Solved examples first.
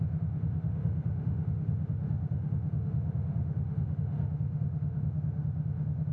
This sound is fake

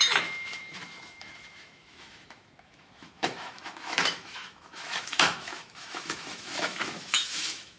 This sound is fake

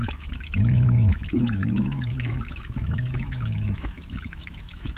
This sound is fake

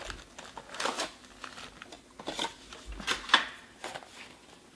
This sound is real